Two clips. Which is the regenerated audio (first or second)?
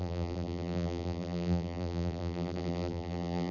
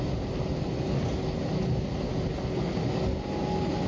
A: first